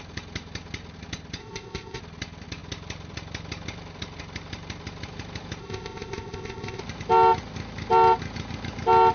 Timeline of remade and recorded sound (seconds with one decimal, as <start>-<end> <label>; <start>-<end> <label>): 0.0-1.4 recorded; 1.4-2.0 remade; 2.0-5.6 recorded; 5.6-6.8 remade; 6.8-9.1 recorded

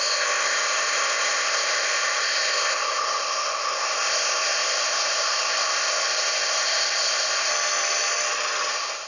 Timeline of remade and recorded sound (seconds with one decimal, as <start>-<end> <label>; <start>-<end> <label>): 0.0-7.5 remade; 7.5-8.7 recorded; 8.7-9.1 remade